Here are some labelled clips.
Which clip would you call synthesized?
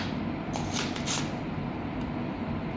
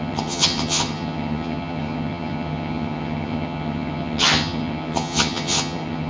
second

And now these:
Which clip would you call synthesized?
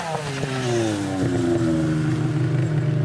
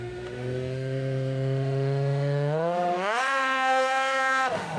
second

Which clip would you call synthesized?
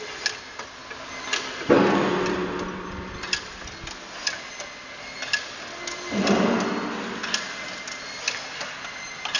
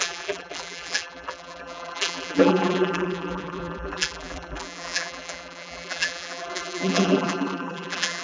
second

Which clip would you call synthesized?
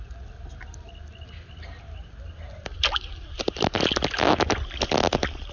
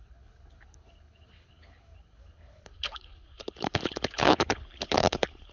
second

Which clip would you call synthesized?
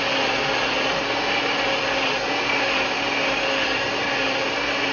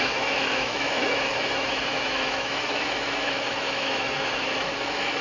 second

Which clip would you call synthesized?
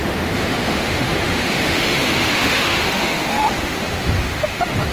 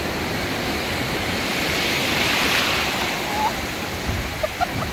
first